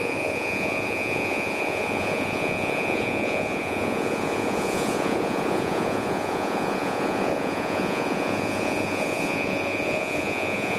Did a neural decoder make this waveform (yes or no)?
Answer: yes